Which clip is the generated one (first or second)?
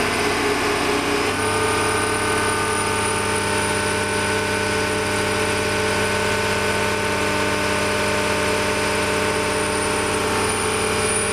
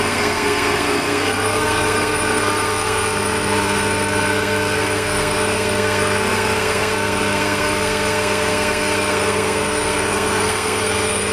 second